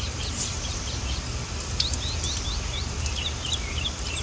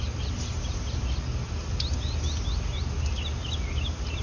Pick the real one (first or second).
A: second